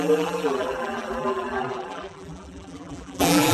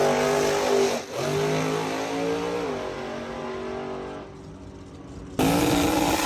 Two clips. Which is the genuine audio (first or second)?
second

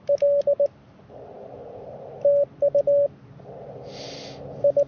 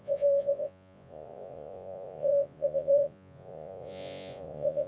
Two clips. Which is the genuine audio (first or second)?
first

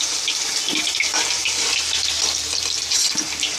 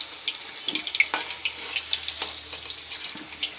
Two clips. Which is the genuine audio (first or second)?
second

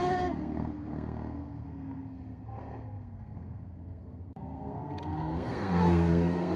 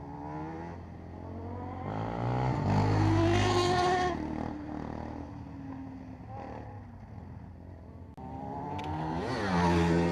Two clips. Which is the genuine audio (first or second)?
second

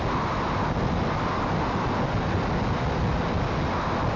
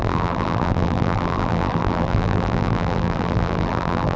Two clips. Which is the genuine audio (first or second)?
first